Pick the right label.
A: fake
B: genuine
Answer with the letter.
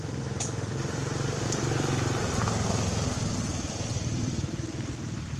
B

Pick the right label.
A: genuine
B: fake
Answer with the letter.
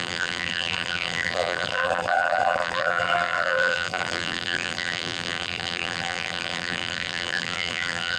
B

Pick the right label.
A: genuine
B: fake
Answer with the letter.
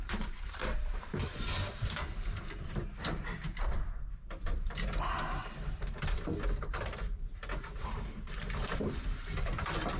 B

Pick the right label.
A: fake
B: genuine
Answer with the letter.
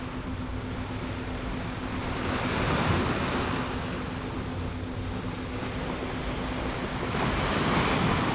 B